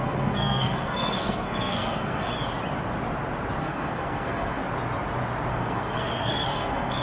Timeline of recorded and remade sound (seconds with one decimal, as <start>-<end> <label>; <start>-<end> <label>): 0.0-2.3 remade; 2.3-3.6 recorded; 3.6-4.6 remade; 4.6-5.5 recorded; 5.5-7.0 remade